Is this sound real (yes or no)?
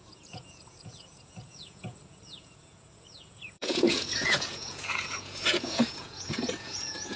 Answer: no